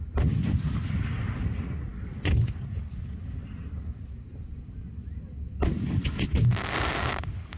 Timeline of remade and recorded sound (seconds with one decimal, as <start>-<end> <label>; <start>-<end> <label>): 0.0-7.6 recorded